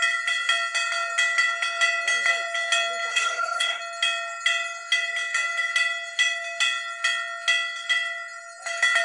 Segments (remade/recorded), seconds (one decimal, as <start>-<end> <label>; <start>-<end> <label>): 0.0-3.1 recorded; 3.1-3.8 remade; 3.8-9.0 recorded